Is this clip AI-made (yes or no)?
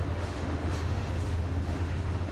yes